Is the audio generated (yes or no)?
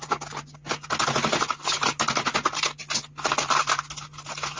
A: no